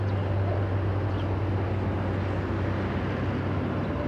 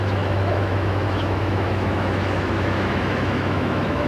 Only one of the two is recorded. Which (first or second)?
first